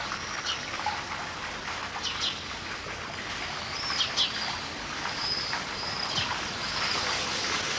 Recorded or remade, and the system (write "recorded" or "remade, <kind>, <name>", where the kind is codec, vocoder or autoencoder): recorded